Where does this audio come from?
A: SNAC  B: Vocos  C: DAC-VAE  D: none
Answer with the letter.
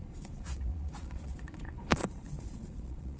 B